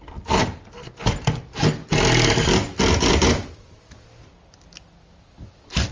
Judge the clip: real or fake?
real